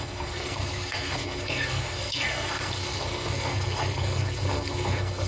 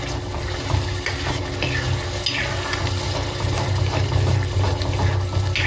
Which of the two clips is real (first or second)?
second